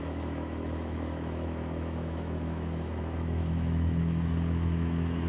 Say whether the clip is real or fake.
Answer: fake